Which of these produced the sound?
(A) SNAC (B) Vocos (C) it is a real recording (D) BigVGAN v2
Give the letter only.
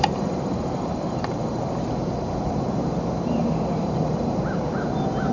D